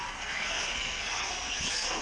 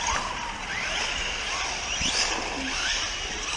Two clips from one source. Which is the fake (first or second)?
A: first